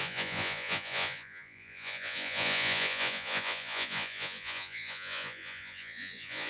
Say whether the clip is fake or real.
fake